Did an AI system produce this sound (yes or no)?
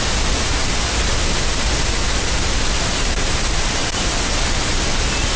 no